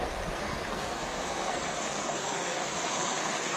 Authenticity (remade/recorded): remade